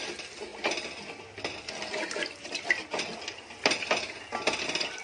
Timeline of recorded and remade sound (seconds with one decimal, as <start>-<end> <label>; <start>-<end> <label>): 0.0-5.0 recorded

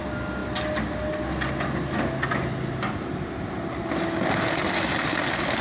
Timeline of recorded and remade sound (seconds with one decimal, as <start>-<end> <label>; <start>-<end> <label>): 0.0-5.6 recorded